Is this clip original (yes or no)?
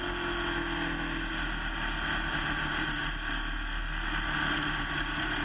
yes